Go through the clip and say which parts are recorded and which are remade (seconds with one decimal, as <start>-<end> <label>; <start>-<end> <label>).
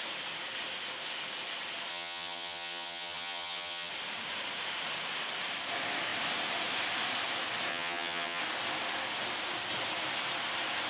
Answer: 0.0-1.9 recorded; 1.9-3.9 remade; 3.9-7.7 recorded; 7.7-8.4 remade; 8.4-10.9 recorded